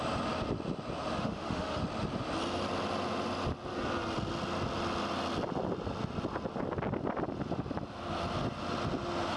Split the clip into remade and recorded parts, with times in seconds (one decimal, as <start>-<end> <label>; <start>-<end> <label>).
0.0-1.2 recorded; 1.2-1.8 remade; 1.8-9.4 recorded